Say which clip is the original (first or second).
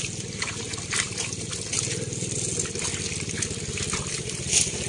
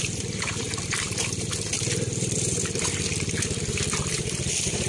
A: first